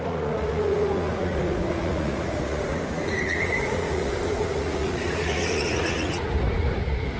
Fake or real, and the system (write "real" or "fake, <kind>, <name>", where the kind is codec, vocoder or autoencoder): fake, vocoder, Vocos